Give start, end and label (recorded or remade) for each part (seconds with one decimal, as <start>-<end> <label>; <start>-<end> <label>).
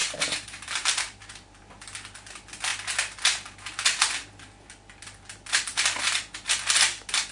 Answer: 0.0-1.6 remade; 1.6-7.3 recorded